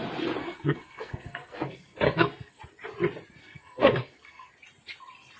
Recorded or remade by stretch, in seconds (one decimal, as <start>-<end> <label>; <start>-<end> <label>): 0.0-0.4 recorded; 0.4-2.6 remade; 2.6-3.4 recorded; 3.4-4.5 remade; 4.5-5.4 recorded